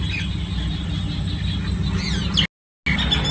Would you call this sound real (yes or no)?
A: yes